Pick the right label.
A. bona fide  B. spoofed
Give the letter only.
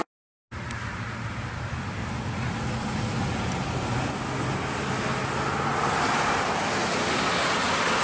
A